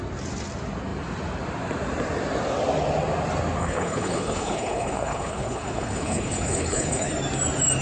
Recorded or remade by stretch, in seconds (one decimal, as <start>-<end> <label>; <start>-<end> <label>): 0.0-3.6 recorded; 3.6-7.1 remade; 7.1-7.8 recorded